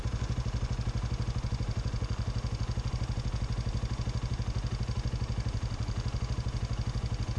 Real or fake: real